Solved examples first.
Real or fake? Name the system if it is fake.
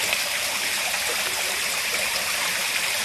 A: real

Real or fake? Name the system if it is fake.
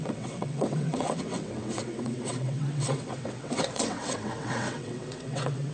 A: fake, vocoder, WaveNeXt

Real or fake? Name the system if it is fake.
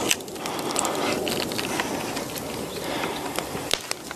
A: real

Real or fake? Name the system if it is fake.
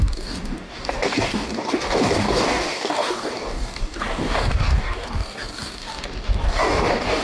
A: fake, codec, DAC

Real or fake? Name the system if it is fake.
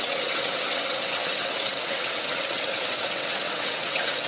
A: fake, vocoder, WaveNeXt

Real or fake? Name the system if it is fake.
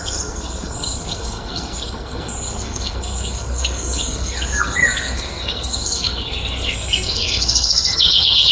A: fake, codec, SNAC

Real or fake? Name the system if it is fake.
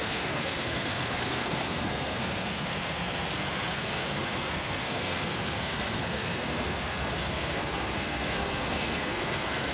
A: fake, codec, SNAC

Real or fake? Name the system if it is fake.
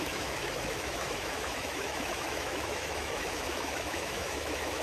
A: fake, autoencoder, DAC-VAE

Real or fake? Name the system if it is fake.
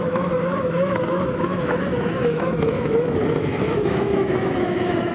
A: fake, autoencoder, DAC-VAE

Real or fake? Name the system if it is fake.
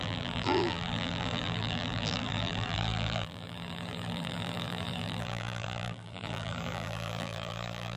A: fake, vocoder, BigVGAN v2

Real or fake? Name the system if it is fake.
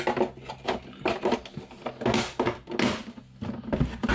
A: real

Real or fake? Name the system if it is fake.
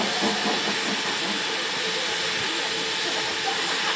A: real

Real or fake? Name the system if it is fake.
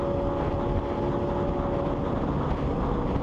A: real